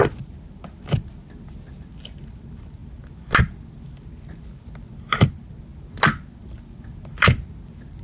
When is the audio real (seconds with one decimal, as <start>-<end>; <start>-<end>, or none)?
0.0-8.0